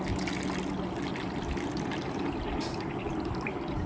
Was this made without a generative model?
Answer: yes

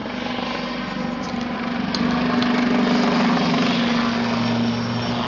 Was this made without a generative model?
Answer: yes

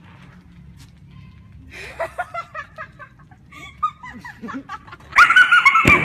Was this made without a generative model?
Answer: yes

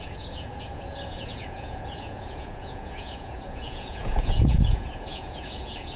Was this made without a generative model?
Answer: no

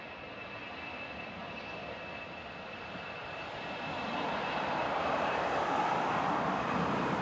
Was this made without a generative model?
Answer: yes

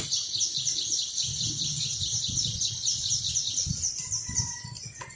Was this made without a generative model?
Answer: yes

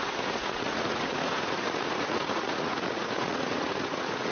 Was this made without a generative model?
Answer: no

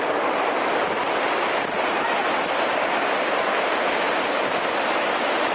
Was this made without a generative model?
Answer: yes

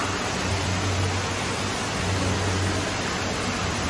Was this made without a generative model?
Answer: yes